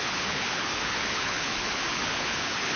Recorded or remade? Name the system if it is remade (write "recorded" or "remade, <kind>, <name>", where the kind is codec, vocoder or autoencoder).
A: remade, codec, HILCodec